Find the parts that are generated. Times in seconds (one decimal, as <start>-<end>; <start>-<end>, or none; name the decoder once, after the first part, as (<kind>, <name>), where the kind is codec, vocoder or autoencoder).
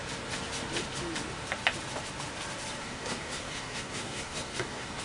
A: 2.8-5.0 (codec, SNAC)